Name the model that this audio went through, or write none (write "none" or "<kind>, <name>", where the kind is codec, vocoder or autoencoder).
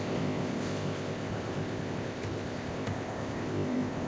codec, ZipCodec